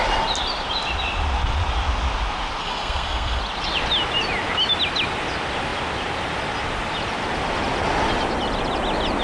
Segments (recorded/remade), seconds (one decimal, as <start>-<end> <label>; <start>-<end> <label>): 0.0-2.6 recorded; 2.6-3.4 remade; 3.4-9.2 recorded